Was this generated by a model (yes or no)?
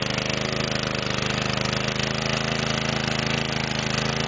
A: no